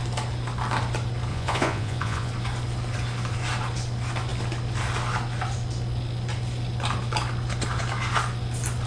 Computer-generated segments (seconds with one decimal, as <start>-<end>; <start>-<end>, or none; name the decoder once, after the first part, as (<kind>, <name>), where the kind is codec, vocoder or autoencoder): 1.3-2.3 (vocoder, Vocos)